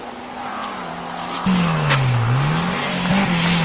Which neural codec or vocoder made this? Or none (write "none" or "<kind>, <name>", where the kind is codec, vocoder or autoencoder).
none